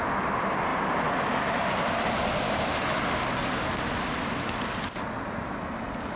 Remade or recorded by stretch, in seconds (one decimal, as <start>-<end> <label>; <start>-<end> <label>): 0.0-6.2 recorded